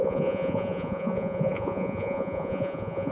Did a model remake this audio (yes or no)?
yes